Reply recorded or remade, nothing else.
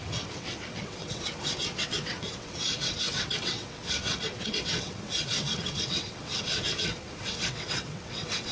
remade